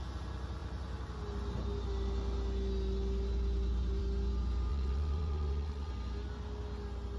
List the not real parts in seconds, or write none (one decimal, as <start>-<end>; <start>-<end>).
4.7-5.9